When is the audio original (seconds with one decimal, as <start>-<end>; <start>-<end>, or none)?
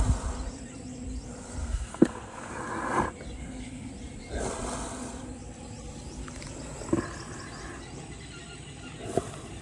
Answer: 0.0-1.6; 2.5-3.4; 3.9-9.6